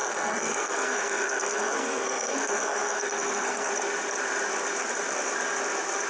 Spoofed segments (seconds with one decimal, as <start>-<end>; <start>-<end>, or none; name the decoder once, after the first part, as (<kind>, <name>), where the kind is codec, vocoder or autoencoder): 0.0-3.7 (codec, SNAC)